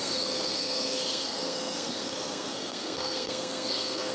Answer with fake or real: fake